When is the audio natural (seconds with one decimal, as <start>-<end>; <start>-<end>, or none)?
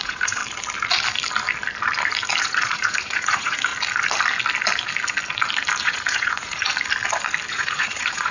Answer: 0.4-2.4; 3.7-5.8; 6.7-7.5